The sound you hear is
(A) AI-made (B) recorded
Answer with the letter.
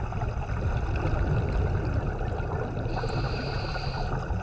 B